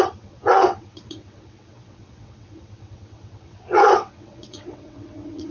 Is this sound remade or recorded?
remade